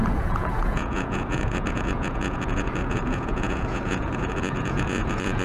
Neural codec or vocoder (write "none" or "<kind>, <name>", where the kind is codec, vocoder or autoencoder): vocoder, Vocos